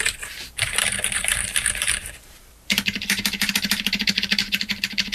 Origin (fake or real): fake